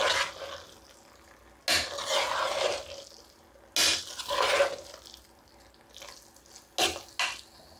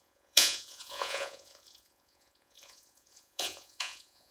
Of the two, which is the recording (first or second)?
first